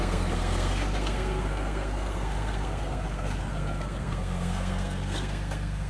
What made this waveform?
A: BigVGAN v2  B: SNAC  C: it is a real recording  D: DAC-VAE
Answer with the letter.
B